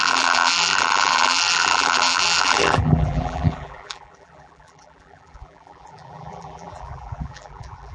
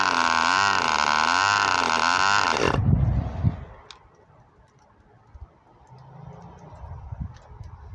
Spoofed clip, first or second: first